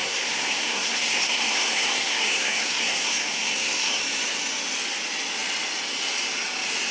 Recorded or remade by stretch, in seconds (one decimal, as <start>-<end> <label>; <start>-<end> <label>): 0.0-4.0 remade; 4.0-6.9 recorded